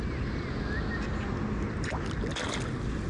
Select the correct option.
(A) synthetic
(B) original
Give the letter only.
B